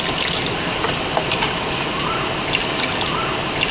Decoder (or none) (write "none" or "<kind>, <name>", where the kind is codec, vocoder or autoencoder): none